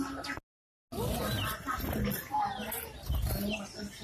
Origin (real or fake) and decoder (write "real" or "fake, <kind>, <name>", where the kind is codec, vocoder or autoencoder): real